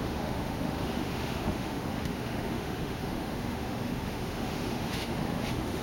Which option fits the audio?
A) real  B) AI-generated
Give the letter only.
B